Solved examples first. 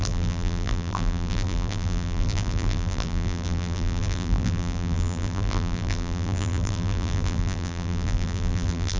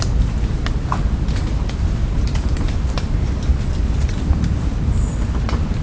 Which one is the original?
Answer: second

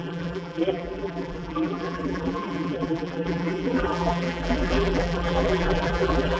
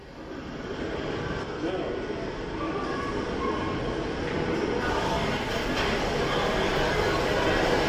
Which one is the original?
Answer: second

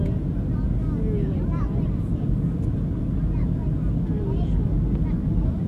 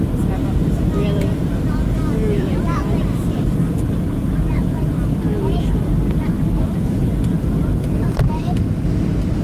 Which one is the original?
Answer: first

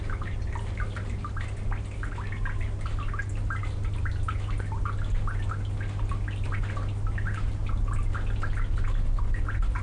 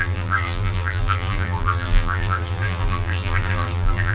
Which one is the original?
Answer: first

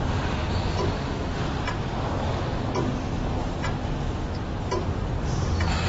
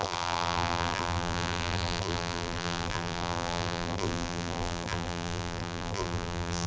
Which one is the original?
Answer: first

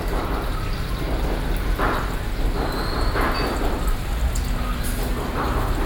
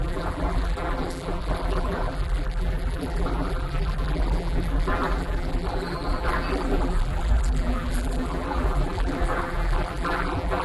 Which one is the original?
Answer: first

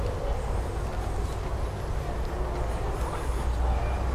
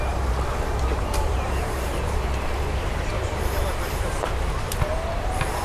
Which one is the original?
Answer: first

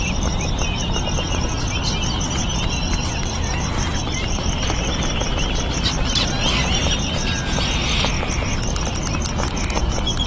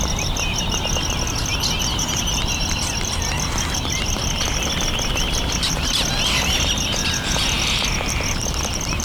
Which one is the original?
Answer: first